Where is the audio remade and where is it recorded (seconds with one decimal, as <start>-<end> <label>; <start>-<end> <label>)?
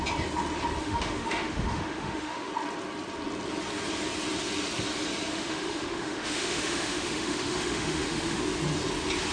0.0-0.8 recorded; 0.8-2.5 remade; 2.5-5.3 recorded; 5.3-8.4 remade; 8.4-9.3 recorded